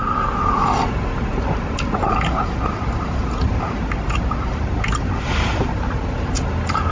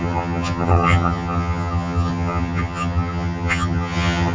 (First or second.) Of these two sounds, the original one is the first